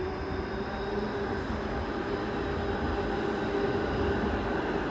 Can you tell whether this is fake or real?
real